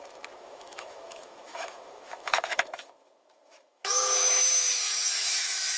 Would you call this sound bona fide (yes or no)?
no